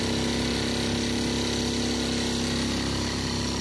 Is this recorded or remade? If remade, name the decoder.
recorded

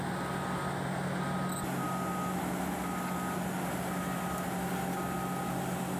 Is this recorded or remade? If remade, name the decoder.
recorded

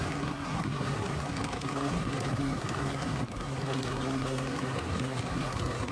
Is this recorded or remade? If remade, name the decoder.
remade, codec, SNAC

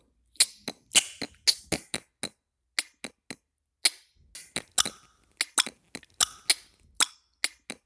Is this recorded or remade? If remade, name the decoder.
recorded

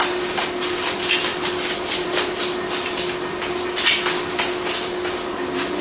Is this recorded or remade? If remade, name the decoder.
recorded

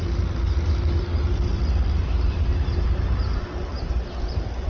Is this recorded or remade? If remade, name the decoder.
recorded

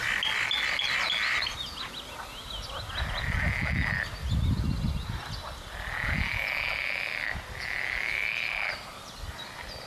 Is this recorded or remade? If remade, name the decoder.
recorded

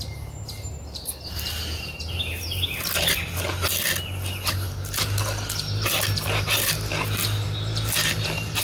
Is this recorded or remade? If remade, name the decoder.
recorded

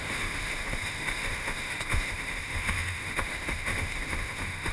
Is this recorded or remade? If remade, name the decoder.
remade, autoencoder, DAC-VAE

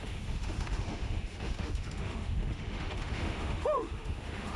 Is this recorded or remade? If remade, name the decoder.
remade, autoencoder, DAC-VAE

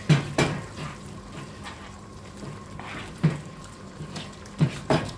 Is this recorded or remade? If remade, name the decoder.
remade, vocoder, BigVGAN v2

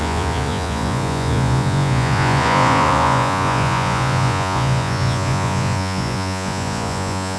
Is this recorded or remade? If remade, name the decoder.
remade, vocoder, Vocos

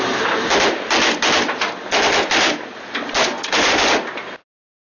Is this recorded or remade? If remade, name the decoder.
recorded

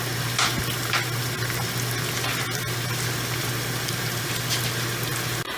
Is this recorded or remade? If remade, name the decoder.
recorded